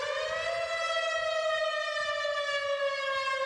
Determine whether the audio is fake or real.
real